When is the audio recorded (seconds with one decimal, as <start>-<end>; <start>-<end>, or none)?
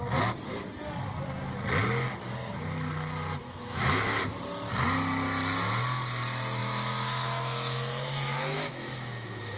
0.0-3.4; 4.2-6.6